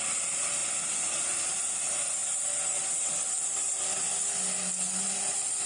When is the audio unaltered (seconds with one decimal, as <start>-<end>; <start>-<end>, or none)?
0.0-5.7